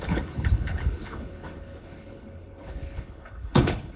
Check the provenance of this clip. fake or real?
fake